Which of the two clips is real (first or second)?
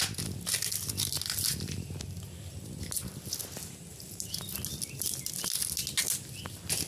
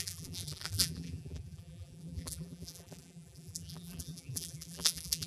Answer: first